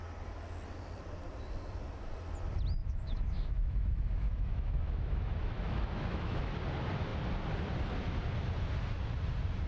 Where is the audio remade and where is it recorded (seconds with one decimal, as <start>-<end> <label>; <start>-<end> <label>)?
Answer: 0.0-2.8 recorded; 2.8-6.5 remade; 6.5-9.7 recorded